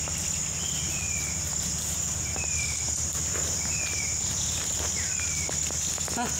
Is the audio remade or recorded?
recorded